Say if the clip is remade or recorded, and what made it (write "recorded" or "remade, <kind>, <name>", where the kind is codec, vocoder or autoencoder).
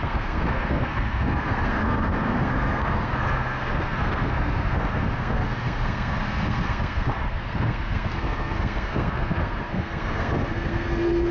remade, codec, SNAC